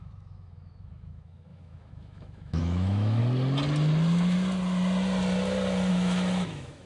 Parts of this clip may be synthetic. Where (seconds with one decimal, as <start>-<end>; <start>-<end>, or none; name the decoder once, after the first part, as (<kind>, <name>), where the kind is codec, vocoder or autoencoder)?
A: 0.0-3.2 (autoencoder, DAC-VAE); 5.9-6.9